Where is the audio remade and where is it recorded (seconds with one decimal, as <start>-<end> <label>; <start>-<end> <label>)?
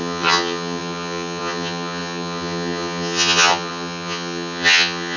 0.0-5.2 remade